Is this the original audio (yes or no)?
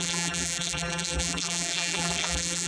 no